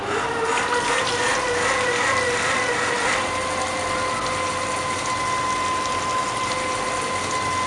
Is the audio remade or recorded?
recorded